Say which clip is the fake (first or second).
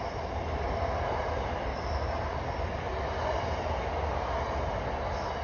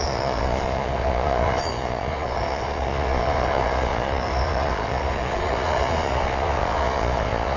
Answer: second